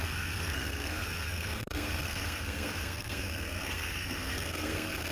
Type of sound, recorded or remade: remade